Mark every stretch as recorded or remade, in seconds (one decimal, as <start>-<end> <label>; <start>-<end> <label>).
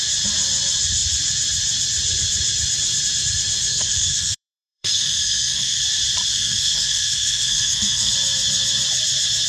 0.0-3.7 recorded; 3.7-5.8 remade; 5.8-6.3 recorded; 6.3-8.1 remade; 8.1-9.5 recorded